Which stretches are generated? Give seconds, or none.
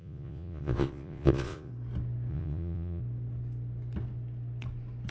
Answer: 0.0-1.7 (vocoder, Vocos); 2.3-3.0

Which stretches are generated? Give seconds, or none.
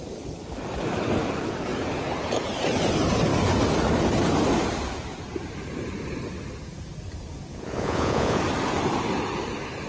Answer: 7.5-8.4 (vocoder, Vocos)